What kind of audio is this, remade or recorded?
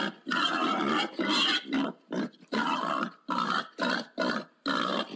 recorded